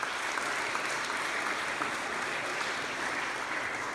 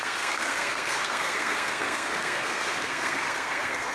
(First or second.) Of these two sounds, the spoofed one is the second